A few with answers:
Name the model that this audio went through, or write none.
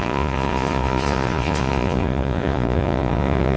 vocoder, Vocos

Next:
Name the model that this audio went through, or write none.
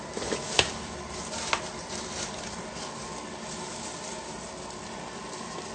none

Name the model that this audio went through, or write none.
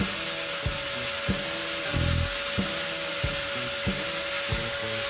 none